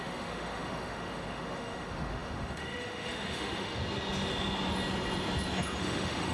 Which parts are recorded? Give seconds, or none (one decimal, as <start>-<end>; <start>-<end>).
3.8-5.8